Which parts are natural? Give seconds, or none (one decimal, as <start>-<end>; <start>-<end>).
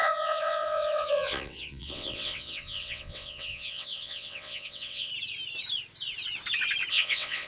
5.1-6.9